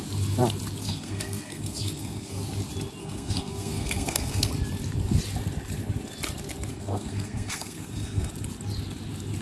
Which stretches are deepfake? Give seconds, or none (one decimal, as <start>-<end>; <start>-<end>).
0.8-2.4; 3.0-4.5; 6.7-8.3